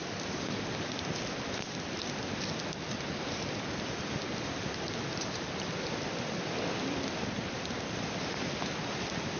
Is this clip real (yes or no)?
no